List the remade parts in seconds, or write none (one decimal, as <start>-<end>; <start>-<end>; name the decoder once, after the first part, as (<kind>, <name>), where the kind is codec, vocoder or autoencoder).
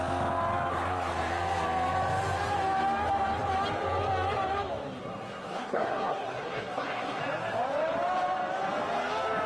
0.7-1.3 (codec, SNAC); 5.0-7.2